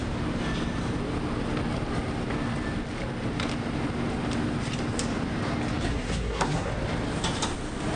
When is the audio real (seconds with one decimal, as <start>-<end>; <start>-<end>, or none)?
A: 0.0-5.9; 6.7-8.0